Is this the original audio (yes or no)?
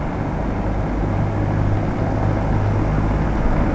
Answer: yes